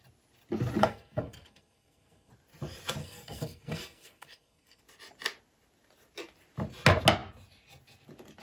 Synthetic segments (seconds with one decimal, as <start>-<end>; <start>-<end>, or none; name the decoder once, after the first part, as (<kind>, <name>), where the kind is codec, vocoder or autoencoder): 0.8-2.3 (codec, SNAC); 3.0-4.8